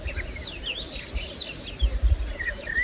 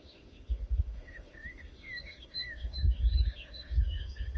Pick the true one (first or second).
first